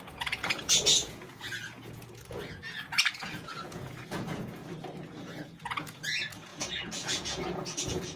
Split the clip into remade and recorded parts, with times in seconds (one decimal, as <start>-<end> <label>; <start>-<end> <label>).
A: 0.0-4.6 remade; 4.6-5.1 recorded; 5.1-8.2 remade